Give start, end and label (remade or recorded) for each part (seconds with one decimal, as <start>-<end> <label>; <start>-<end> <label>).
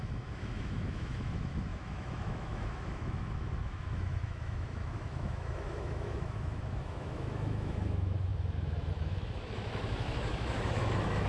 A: 0.0-11.3 remade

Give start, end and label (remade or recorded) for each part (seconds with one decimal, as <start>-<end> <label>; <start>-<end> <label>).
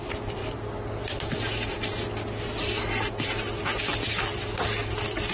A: 0.0-5.3 recorded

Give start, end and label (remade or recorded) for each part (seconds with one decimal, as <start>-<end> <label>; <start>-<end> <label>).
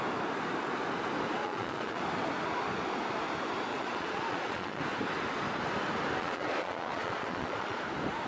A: 0.0-1.4 recorded; 1.4-2.0 remade; 2.0-3.7 recorded; 3.7-4.8 remade; 4.8-6.2 recorded; 6.2-7.8 remade; 7.8-8.3 recorded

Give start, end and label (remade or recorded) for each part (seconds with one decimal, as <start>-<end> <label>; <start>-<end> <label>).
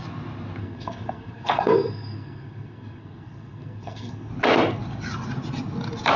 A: 0.0-0.6 recorded; 0.6-4.3 remade; 4.3-6.2 recorded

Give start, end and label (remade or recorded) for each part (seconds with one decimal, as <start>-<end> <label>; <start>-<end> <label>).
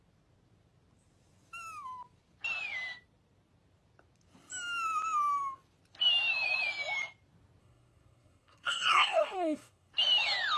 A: 0.0-7.6 recorded; 7.6-9.9 remade; 9.9-10.6 recorded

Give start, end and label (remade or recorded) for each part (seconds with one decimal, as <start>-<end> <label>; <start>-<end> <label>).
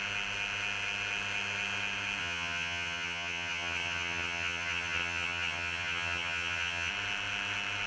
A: 0.0-2.2 recorded; 2.2-6.9 remade; 6.9-7.9 recorded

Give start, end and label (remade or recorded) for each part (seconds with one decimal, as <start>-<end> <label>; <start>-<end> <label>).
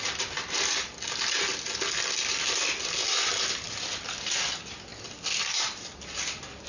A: 0.0-3.0 recorded; 3.0-4.5 remade; 4.5-4.9 recorded; 4.9-6.7 remade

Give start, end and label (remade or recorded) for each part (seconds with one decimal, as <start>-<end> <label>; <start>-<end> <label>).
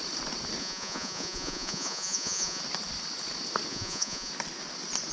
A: 0.0-0.6 recorded; 0.6-2.6 remade; 2.6-3.7 recorded; 3.7-4.3 remade; 4.3-5.1 recorded